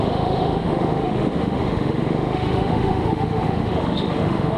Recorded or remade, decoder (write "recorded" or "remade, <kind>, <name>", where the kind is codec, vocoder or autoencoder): remade, autoencoder, DAC-VAE